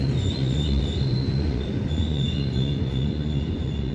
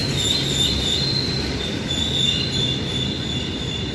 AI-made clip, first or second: first